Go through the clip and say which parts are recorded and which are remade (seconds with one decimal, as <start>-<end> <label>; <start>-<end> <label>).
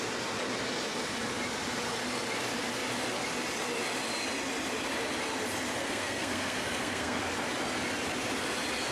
0.0-5.8 recorded; 5.8-7.2 remade; 7.2-8.9 recorded